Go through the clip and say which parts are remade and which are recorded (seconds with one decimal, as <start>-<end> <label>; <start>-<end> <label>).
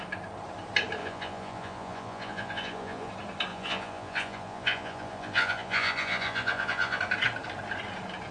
0.0-1.0 recorded; 1.0-3.1 remade; 3.1-3.5 recorded; 3.5-7.0 remade; 7.0-8.3 recorded